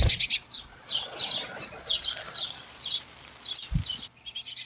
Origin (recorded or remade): recorded